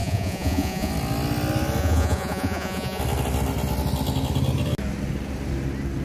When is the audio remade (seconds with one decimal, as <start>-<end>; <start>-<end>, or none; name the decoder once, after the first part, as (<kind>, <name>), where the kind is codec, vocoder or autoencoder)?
0.0-0.9 (vocoder, Vocos); 1.8-3.0